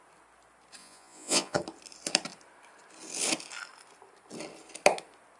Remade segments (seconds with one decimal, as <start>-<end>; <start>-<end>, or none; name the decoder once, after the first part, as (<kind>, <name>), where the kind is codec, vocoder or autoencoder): 0.8-1.6 (vocoder, Vocos)